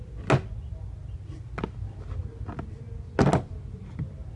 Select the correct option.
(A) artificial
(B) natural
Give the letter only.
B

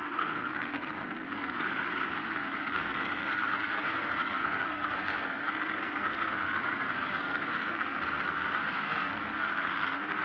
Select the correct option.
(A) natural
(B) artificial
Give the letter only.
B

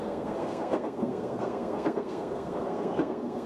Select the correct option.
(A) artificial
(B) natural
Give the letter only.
A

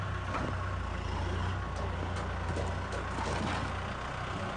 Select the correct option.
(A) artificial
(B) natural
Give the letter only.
B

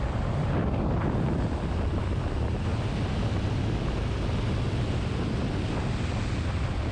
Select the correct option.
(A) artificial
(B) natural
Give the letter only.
B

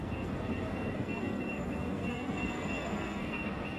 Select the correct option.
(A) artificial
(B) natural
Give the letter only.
A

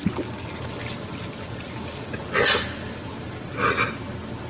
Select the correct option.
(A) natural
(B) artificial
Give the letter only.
A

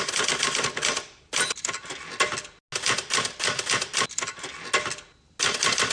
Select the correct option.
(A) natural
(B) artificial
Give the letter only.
A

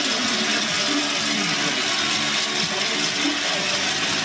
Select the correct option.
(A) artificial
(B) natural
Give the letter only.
B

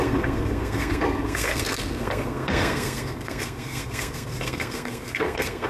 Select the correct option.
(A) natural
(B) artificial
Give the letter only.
B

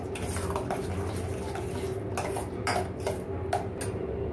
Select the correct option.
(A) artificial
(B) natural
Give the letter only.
B